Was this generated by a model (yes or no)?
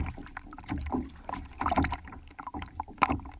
yes